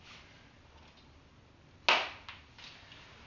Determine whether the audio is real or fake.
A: real